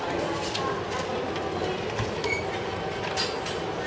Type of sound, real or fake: real